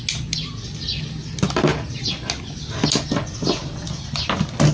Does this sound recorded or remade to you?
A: recorded